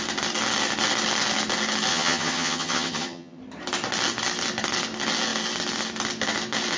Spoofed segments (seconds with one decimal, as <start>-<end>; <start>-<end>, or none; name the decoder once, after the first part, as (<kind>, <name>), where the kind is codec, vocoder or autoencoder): 1.9-3.4 (vocoder, HiFi-GAN)